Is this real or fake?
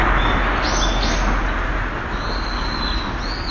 real